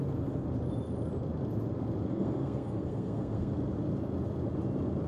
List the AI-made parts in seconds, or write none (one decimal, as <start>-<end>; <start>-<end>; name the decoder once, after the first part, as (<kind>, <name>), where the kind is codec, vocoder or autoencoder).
2.1-3.5 (codec, SNAC)